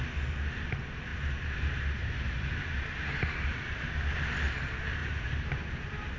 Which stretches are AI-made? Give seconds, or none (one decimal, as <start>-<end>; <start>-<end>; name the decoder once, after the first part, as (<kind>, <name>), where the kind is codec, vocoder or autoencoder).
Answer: 1.1-3.9 (vocoder, BigVGAN v2); 5.0-6.2